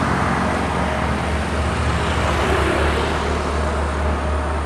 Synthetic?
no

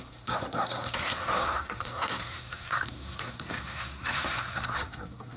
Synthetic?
yes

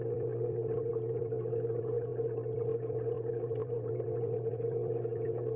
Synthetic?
no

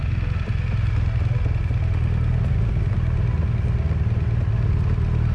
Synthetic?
no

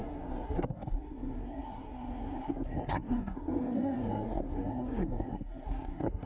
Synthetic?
yes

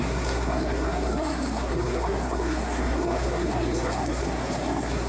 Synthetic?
yes